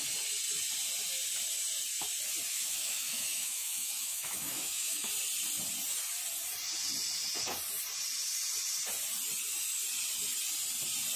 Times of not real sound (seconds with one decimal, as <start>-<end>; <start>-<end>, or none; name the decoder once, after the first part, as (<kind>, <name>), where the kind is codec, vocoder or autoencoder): 2.5-5.1 (autoencoder, DAC-VAE)